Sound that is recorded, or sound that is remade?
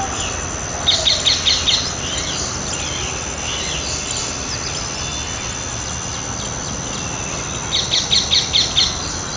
recorded